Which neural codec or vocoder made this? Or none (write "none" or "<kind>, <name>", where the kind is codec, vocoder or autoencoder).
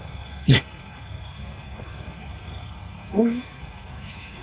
codec, SNAC